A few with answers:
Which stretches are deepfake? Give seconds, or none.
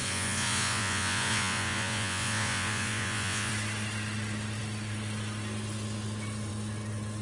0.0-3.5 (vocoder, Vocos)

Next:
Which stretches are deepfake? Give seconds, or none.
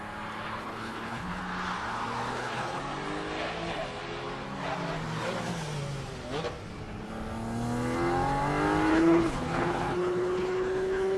0.6-1.4 (codec, HILCodec); 2.3-2.8; 8.9-11.2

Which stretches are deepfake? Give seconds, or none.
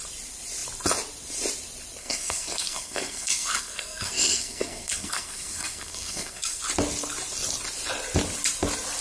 2.0-6.6 (codec, SNAC)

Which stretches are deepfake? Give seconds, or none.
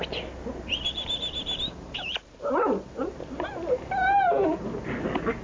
0.7-3.9 (vocoder, BigVGAN v2)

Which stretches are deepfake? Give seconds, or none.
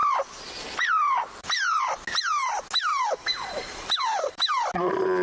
0.0-1.8 (vocoder, BigVGAN v2); 2.9-4.5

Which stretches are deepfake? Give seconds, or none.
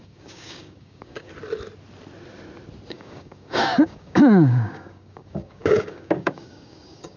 0.0-1.3 (codec, DAC); 2.9-7.2